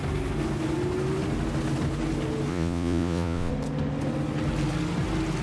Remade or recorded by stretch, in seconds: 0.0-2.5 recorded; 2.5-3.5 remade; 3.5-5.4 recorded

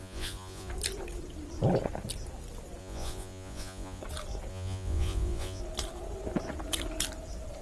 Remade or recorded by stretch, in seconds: 0.0-0.7 remade; 0.7-2.8 recorded; 2.8-4.0 remade; 4.0-4.5 recorded; 4.5-5.6 remade; 5.6-7.6 recorded

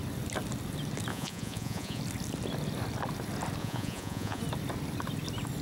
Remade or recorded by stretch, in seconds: 0.0-1.1 recorded; 1.1-2.0 remade; 2.0-3.6 recorded; 3.6-4.4 remade; 4.4-5.6 recorded